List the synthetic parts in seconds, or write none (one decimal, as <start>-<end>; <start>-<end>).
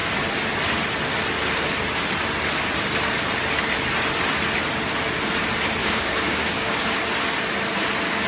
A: 5.8-7.0